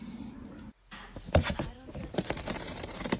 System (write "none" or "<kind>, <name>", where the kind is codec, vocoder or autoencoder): vocoder, BigVGAN v2